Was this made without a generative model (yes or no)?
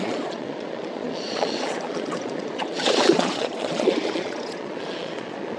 no